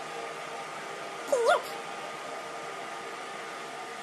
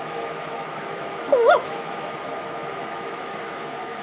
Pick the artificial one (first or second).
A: second